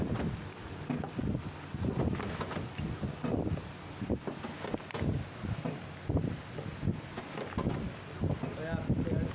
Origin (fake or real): real